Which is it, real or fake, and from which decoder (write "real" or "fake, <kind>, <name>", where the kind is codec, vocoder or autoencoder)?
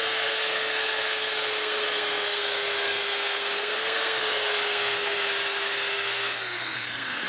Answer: fake, codec, SNAC